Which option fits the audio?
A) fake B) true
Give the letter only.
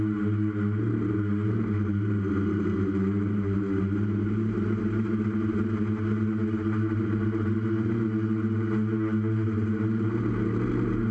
B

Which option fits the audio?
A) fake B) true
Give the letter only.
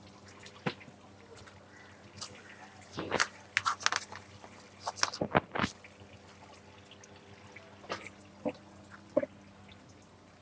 B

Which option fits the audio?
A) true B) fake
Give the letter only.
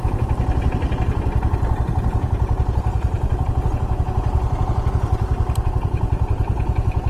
B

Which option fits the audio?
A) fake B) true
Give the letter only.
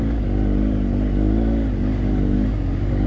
B